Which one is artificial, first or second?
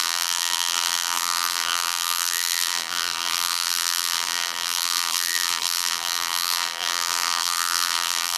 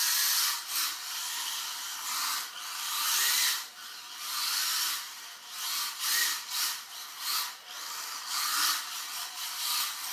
first